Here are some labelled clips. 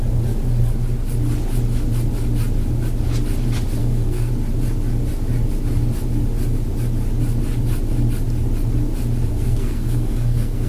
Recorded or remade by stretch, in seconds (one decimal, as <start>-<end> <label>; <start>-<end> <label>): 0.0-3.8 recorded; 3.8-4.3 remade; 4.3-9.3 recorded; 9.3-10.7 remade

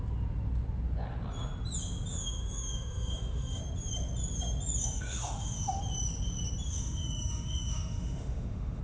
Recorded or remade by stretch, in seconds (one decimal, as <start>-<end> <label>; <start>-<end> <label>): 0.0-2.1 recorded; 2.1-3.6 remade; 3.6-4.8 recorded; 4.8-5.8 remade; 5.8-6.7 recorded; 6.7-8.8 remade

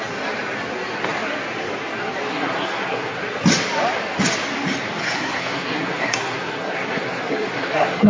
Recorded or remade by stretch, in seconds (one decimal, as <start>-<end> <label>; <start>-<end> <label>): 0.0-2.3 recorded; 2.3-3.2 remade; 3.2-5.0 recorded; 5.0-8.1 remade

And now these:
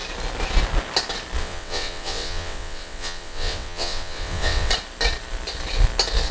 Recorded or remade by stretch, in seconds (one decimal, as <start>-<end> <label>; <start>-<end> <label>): 0.0-1.4 recorded; 1.4-4.7 remade; 4.7-6.3 recorded

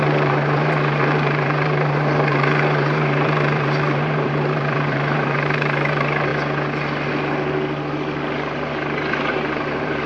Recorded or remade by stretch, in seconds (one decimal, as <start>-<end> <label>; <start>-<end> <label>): 0.0-6.3 remade; 6.3-9.3 recorded; 9.3-10.1 remade

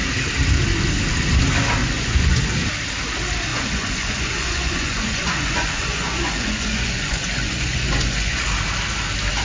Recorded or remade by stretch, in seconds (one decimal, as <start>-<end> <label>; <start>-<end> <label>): 0.0-1.8 recorded; 1.8-2.4 remade; 2.4-3.5 recorded; 3.5-8.5 remade; 8.5-9.4 recorded